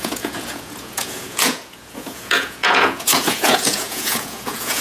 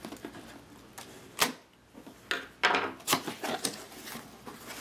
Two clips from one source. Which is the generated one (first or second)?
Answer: first